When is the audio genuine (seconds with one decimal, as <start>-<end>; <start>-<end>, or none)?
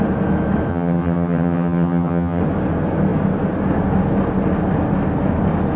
0.0-0.7; 2.4-5.8